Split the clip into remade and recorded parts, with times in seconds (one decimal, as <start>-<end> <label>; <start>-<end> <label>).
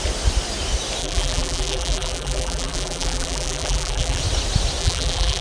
0.0-1.0 recorded; 1.0-4.2 remade; 4.2-4.8 recorded; 4.8-5.4 remade